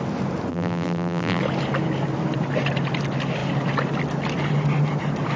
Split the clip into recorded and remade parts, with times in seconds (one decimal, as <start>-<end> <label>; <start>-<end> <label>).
0.0-0.5 recorded; 0.5-1.4 remade; 1.4-5.4 recorded